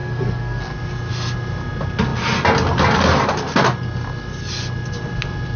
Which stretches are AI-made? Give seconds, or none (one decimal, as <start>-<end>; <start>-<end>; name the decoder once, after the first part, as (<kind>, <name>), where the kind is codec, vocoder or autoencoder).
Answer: 0.0-0.6 (codec, SNAC)